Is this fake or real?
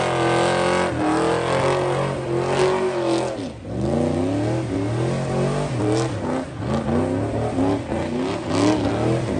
real